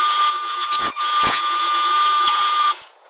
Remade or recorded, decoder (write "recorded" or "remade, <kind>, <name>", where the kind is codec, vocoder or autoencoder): remade, vocoder, Vocos